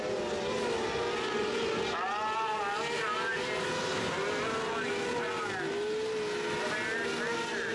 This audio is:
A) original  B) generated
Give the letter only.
A